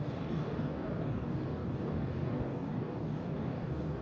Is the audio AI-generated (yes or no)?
yes